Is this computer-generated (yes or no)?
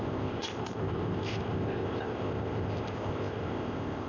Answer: yes